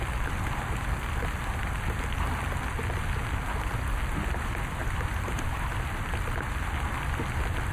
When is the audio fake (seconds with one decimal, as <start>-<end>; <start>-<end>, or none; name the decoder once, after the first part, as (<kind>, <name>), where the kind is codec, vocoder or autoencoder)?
4.8-5.7 (vocoder, BigVGAN v2)